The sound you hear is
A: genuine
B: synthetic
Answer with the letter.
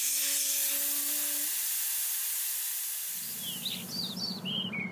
A